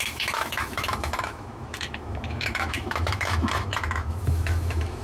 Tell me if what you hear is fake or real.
fake